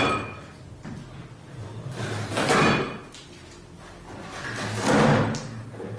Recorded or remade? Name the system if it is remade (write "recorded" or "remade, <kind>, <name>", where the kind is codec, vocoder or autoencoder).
recorded